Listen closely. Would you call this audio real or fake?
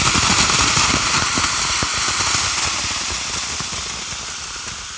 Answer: real